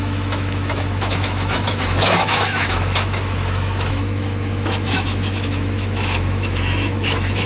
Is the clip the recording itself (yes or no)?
no